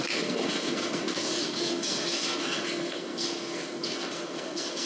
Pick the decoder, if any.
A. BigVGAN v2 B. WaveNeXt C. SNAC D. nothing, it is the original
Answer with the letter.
C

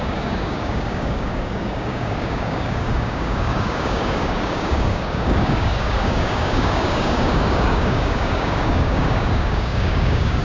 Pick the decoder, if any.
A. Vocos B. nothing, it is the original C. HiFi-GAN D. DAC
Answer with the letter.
D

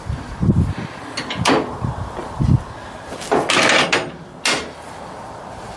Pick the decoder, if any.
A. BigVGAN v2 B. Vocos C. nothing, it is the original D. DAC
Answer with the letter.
C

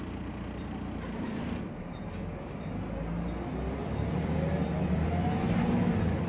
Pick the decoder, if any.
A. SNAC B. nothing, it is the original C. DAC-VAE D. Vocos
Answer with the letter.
B